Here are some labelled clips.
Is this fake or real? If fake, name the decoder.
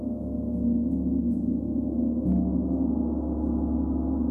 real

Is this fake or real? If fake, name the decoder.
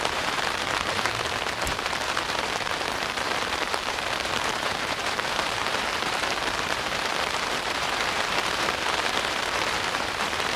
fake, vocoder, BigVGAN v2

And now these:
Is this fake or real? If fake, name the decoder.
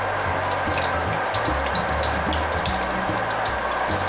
real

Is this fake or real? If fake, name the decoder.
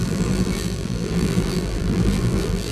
fake, vocoder, BigVGAN v2